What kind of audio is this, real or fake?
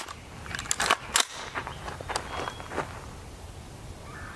real